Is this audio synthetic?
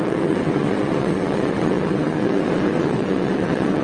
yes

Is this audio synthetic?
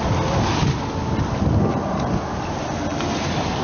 no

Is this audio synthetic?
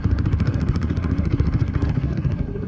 yes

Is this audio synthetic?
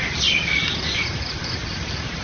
yes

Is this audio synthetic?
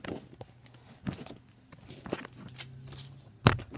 no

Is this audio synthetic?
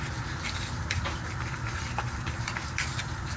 no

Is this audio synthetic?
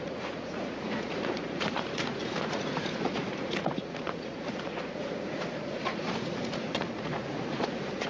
yes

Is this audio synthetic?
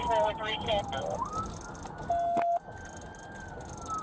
no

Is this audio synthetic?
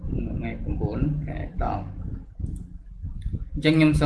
no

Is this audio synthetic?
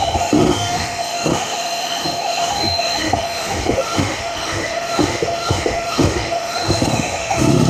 yes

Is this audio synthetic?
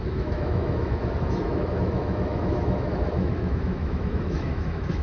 yes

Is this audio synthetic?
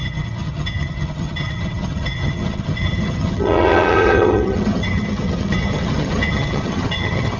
yes